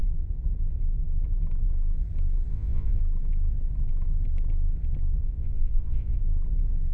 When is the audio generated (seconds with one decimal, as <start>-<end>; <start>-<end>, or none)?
2.5-3.0; 5.2-6.2